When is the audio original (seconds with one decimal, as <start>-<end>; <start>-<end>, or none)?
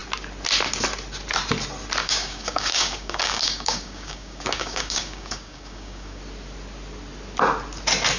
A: 0.0-2.0; 6.2-8.2